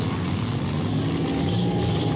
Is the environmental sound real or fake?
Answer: real